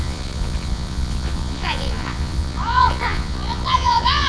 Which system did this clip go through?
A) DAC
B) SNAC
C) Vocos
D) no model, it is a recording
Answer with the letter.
C